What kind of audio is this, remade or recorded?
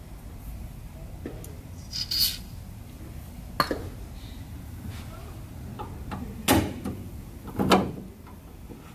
recorded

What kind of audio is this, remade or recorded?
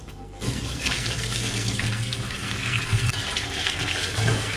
remade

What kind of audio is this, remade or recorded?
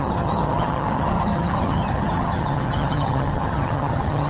remade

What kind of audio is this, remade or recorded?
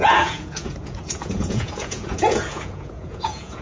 remade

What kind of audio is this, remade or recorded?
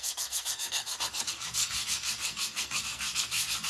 remade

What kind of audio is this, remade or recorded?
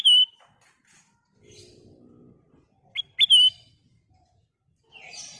recorded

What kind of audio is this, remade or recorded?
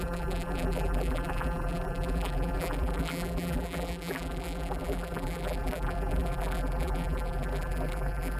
remade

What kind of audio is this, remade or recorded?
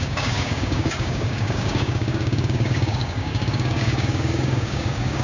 remade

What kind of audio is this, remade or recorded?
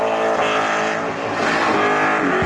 recorded